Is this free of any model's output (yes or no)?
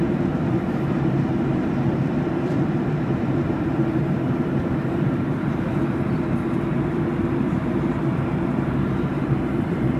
no